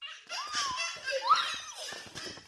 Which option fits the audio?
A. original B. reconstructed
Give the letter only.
A